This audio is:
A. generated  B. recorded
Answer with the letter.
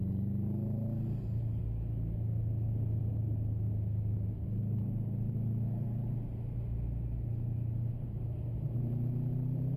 B